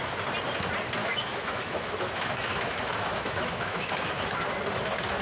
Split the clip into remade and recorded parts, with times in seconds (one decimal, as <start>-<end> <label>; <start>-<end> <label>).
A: 0.0-1.0 recorded; 1.0-4.1 remade; 4.1-5.2 recorded